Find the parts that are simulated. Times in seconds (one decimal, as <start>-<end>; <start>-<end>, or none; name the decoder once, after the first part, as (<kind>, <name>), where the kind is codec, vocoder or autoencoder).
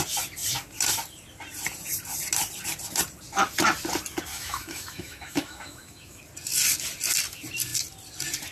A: 4.3-6.2 (autoencoder, DAC-VAE)